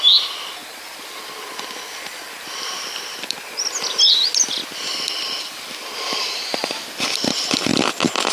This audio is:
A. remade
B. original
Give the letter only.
B